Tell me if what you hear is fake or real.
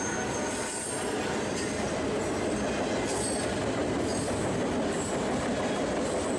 real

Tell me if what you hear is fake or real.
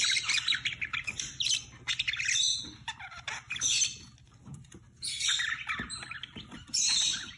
real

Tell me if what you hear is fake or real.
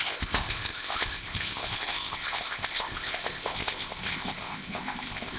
fake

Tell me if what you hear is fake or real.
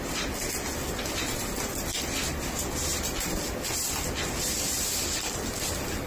real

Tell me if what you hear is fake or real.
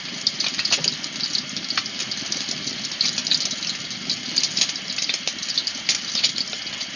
real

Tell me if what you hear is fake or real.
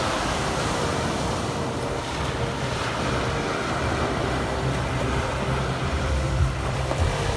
fake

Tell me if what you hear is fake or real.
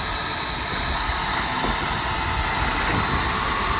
real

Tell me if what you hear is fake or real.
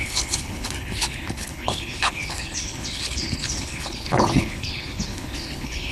fake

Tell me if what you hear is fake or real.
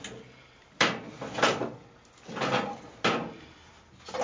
real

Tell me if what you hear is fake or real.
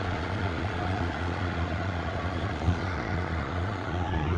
fake